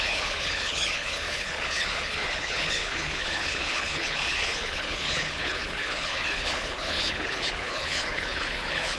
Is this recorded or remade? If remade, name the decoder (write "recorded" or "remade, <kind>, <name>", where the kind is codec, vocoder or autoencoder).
remade, codec, HILCodec